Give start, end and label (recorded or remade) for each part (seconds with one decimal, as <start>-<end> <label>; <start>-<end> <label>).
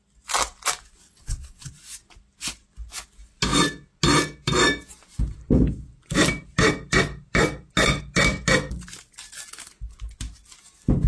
0.0-1.0 recorded; 1.0-1.7 remade; 1.7-11.1 recorded